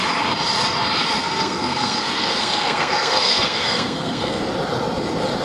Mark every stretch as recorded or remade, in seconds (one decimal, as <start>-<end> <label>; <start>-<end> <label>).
0.0-1.2 recorded; 1.2-4.4 remade; 4.4-5.4 recorded